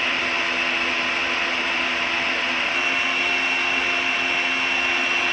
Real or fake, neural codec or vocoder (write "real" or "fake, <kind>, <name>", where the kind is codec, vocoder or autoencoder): real